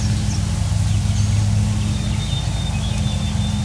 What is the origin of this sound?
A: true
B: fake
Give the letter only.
A